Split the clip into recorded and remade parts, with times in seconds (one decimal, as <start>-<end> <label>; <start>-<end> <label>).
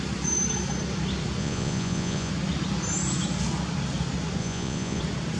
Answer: 0.0-1.4 recorded; 1.4-2.3 remade; 2.3-4.4 recorded; 4.4-5.0 remade; 5.0-5.4 recorded